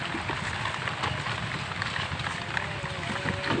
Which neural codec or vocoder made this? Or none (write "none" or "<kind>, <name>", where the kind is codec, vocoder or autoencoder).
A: none